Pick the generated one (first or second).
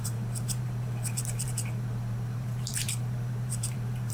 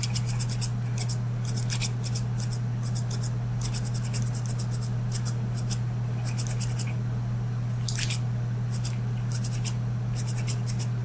first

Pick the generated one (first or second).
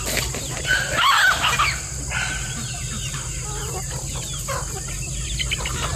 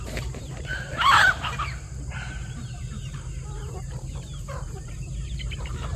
second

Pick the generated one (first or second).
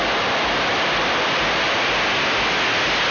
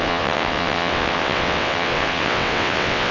second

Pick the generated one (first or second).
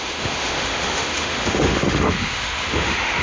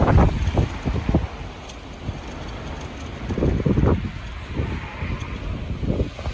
first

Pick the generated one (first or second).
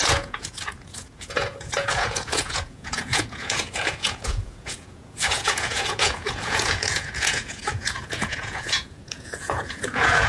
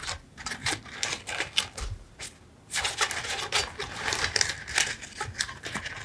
first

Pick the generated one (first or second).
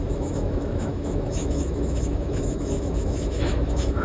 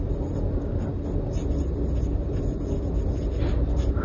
first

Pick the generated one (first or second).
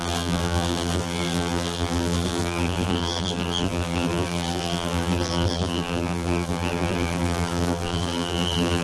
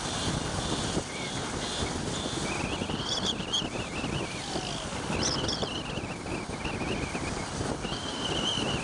first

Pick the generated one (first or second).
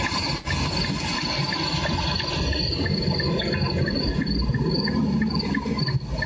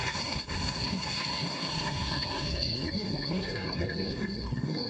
second